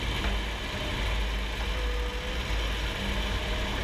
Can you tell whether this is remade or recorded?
recorded